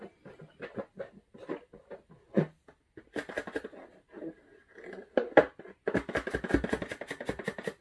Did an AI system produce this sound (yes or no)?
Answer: no